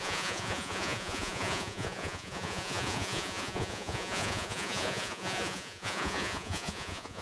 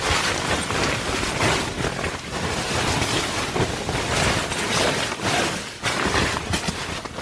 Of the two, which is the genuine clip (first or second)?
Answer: second